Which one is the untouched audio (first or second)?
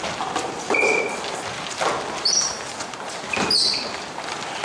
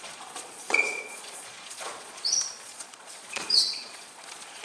first